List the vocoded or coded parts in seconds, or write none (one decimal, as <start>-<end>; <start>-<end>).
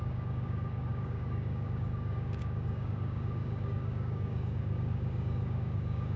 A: 0.0-6.2